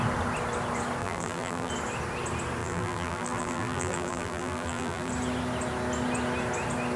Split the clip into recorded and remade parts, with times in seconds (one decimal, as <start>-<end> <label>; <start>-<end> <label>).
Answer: 0.0-1.0 recorded; 1.0-1.7 remade; 1.7-2.6 recorded; 2.6-5.1 remade; 5.1-7.0 recorded